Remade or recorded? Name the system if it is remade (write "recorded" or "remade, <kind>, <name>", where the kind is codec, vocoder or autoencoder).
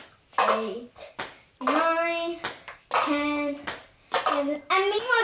recorded